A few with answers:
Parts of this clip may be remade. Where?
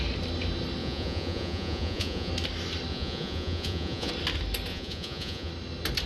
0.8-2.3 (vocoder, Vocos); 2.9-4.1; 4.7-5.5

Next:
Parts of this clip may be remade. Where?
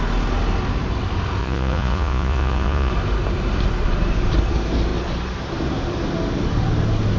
1.4-2.9 (vocoder, Vocos)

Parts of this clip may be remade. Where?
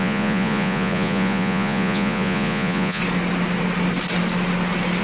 0.0-3.0 (vocoder, Vocos)